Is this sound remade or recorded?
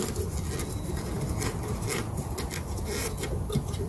recorded